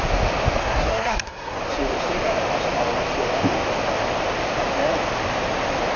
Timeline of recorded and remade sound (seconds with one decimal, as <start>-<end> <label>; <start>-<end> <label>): 0.0-0.6 recorded; 0.6-1.6 remade; 1.6-6.0 recorded